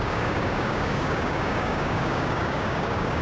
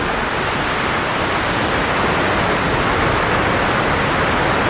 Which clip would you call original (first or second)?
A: second